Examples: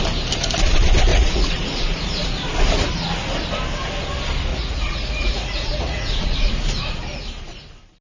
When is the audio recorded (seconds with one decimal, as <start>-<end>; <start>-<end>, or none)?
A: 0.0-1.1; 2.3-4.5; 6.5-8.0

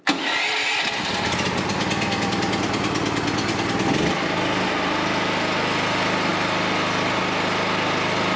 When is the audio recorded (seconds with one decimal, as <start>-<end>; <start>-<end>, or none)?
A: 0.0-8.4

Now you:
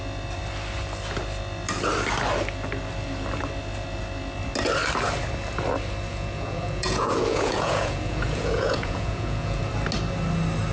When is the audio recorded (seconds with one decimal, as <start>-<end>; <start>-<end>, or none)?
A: 0.0-6.1; 9.6-10.7